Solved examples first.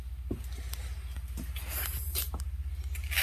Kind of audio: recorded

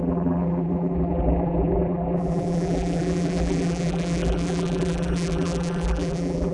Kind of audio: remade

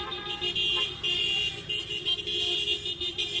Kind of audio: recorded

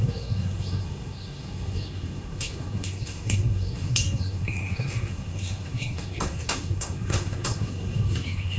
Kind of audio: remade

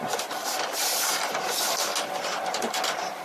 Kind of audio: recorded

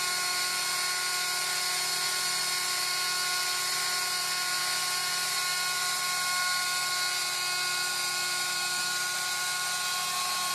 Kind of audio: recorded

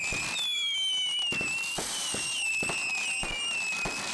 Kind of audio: recorded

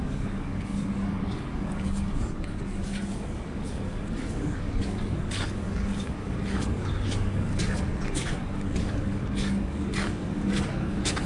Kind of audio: remade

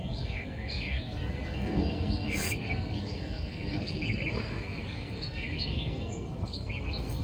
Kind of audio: remade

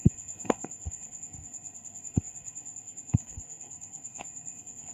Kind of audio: remade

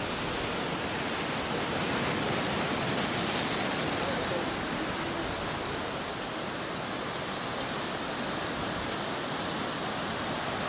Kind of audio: recorded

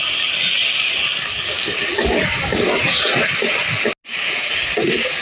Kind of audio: recorded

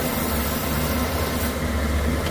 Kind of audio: recorded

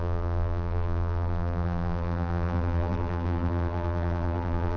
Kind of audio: remade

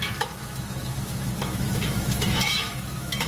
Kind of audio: remade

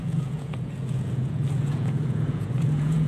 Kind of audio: remade